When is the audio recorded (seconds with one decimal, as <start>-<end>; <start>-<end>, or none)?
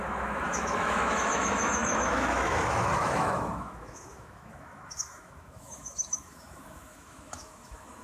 none